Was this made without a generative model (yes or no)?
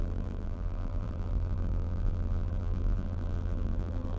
no